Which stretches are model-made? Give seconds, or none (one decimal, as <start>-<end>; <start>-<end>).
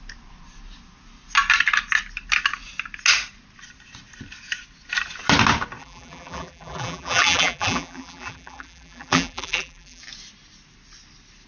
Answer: 5.8-10.0